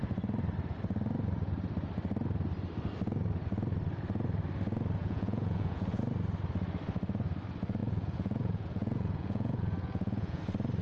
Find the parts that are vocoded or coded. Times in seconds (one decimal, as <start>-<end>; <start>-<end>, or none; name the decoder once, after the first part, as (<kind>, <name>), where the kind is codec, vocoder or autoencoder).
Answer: 5.0-6.0 (vocoder, Vocos); 7.8-10.4